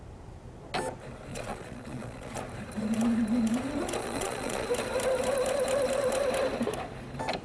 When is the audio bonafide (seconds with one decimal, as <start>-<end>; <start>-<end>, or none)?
0.0-1.3; 2.4-4.0; 4.7-7.4